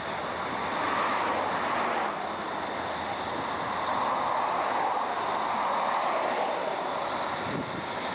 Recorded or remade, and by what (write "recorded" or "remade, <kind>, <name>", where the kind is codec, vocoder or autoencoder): recorded